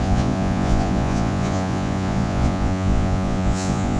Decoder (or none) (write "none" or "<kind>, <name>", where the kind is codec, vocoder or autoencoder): vocoder, Vocos